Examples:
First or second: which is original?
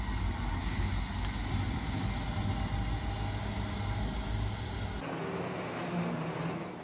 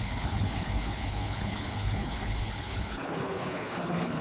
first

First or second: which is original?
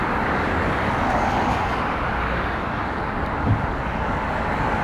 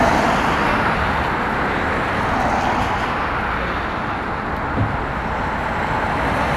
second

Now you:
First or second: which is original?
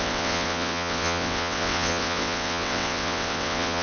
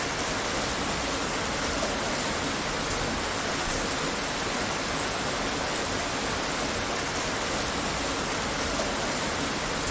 second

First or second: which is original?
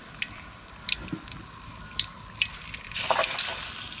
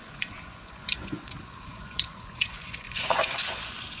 first